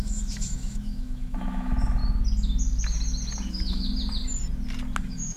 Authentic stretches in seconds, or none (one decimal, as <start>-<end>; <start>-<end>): 2.0-3.5; 3.9-5.0

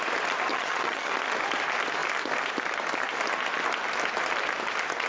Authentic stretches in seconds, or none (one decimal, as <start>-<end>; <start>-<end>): 0.0-0.5; 1.1-5.1

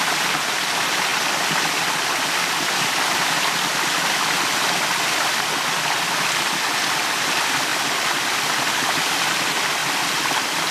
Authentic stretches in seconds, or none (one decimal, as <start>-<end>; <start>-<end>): 0.0-10.7

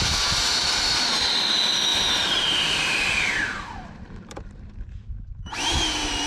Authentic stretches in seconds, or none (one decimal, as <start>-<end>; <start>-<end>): 0.0-1.9; 5.1-6.3

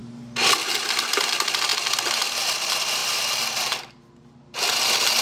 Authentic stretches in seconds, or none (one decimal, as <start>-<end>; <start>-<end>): 0.0-5.2